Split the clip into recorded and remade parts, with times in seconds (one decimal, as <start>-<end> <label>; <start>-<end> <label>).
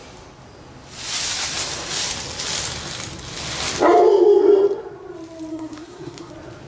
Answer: 0.0-5.5 recorded; 5.5-6.3 remade; 6.3-6.7 recorded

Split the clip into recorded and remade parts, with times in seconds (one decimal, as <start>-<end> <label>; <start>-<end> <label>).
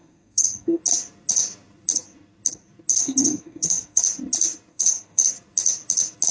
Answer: 0.0-0.8 remade; 0.8-2.9 recorded; 2.9-4.0 remade; 4.0-4.7 recorded; 4.7-5.3 remade; 5.3-6.3 recorded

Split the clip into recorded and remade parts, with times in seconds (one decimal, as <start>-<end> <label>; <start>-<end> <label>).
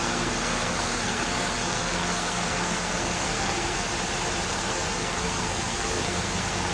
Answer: 0.0-3.9 remade; 3.9-4.5 recorded; 4.5-6.7 remade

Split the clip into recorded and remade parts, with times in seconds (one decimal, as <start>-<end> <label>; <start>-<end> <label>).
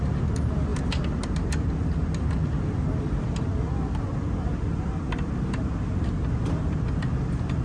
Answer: 0.0-7.6 recorded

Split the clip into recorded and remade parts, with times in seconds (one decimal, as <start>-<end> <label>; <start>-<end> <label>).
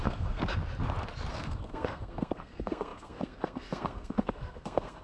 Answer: 0.0-0.4 remade; 0.4-1.3 recorded; 1.3-5.0 remade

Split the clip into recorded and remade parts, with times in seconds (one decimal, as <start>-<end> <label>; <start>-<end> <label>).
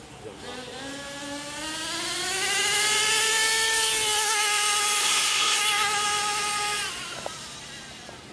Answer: 0.0-5.0 recorded; 5.0-5.6 remade; 5.6-8.3 recorded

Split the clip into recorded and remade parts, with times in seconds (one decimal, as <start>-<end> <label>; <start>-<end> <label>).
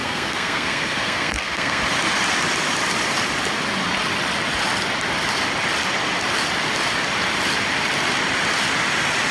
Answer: 0.0-1.8 remade; 1.8-9.3 recorded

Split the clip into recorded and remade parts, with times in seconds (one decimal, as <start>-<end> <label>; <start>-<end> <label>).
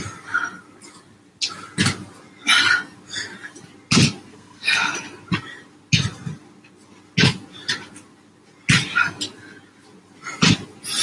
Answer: 0.0-4.3 recorded; 4.3-4.9 remade; 4.9-11.0 recorded